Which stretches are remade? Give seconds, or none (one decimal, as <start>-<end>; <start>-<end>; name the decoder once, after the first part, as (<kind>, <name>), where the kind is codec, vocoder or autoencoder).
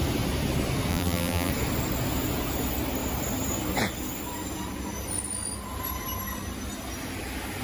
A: 0.9-1.5 (vocoder, BigVGAN v2)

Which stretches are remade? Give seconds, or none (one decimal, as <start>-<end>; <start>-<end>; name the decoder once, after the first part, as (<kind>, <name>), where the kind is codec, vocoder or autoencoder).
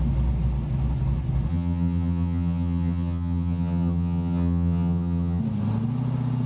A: 1.5-5.4 (vocoder, HiFi-GAN)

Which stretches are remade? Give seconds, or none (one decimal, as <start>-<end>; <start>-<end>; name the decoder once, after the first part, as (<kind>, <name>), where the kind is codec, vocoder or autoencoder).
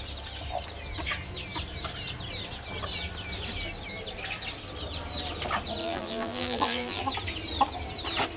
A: 5.8-7.0 (vocoder, BigVGAN v2)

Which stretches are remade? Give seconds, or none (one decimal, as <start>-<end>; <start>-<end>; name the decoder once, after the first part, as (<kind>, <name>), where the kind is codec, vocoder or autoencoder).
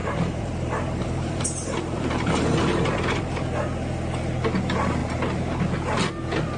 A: 0.0-3.2 (vocoder, BigVGAN v2)